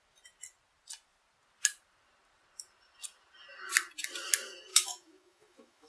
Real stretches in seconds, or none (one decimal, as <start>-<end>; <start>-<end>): 0.0-4.7